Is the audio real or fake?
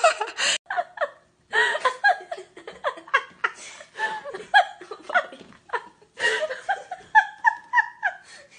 real